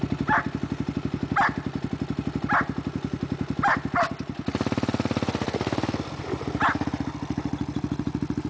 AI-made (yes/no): no